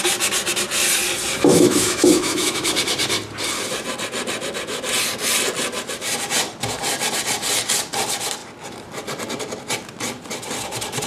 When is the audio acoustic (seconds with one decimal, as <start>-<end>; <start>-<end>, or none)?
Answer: 0.0-1.5; 2.7-11.1